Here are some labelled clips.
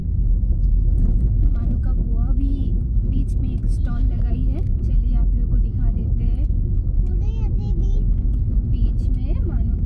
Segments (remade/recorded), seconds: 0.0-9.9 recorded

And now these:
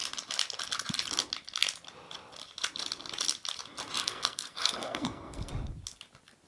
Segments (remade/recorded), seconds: 0.0-4.0 recorded; 4.0-5.5 remade; 5.5-6.5 recorded